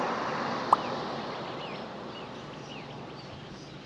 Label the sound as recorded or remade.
remade